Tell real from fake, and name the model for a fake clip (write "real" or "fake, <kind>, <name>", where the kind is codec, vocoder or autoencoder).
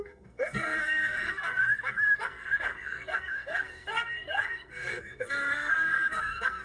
fake, codec, SNAC